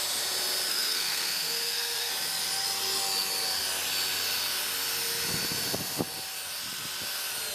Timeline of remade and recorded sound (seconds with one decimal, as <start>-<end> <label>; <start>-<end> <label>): 0.0-0.7 recorded; 0.7-2.1 remade; 2.1-7.5 recorded